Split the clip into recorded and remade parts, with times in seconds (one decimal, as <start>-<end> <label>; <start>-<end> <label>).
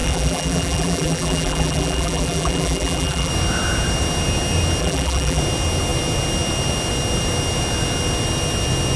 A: 0.0-3.3 remade; 3.3-4.8 recorded; 4.8-5.4 remade; 5.4-9.0 recorded